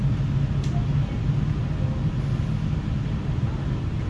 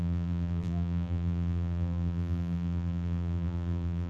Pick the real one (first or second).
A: first